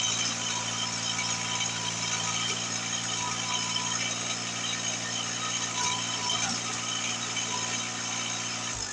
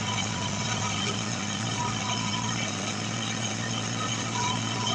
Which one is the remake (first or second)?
second